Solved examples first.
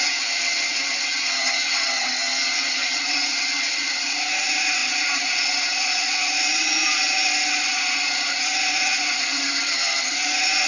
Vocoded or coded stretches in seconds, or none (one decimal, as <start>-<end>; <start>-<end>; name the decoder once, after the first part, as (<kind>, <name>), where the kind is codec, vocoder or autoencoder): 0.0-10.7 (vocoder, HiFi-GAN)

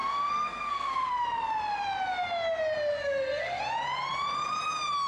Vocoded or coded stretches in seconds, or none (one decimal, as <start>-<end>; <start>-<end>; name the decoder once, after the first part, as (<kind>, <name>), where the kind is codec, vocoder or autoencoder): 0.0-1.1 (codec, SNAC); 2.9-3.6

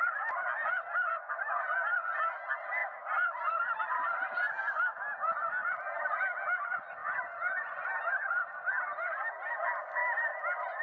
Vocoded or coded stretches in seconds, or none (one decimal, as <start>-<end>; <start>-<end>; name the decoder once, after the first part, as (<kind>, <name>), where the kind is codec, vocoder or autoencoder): none

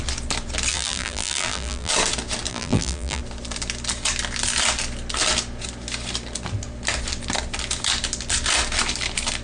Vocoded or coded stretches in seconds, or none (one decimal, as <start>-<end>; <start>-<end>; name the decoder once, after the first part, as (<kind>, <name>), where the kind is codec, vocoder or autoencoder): 0.7-1.9 (vocoder, BigVGAN v2); 2.5-3.2

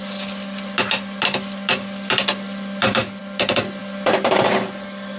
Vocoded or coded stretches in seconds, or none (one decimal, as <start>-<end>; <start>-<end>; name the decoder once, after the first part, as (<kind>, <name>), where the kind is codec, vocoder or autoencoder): none

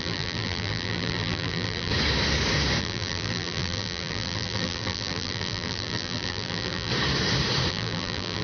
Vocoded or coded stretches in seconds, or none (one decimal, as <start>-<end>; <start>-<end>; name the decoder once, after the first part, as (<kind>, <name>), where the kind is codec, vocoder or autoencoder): 0.0-1.9 (vocoder, BigVGAN v2); 2.8-6.9; 7.7-8.4